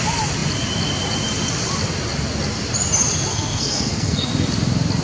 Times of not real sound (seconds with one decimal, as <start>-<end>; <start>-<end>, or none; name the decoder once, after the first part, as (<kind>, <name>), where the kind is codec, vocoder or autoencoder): 3.3-4.3 (codec, SNAC)